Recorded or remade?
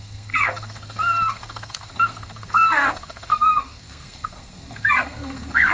remade